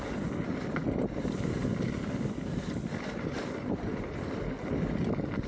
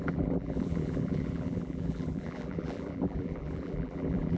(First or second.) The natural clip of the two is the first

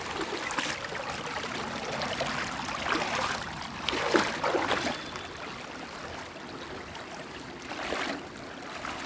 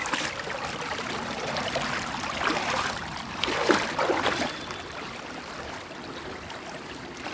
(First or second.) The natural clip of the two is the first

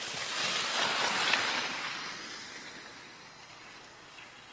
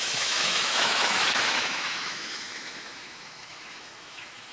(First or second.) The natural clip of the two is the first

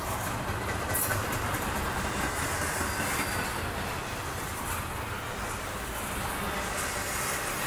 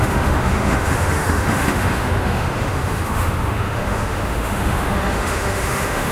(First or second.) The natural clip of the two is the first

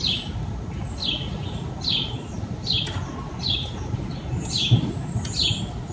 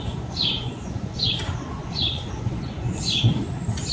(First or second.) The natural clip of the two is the first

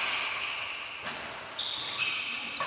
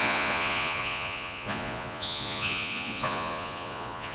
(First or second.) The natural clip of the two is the first